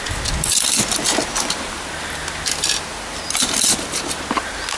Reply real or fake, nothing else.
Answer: real